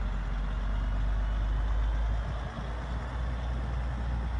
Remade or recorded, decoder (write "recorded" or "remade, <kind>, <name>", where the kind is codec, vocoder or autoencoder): recorded